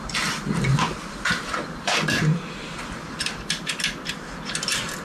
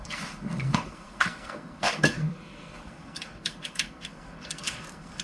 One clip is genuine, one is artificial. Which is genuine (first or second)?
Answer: first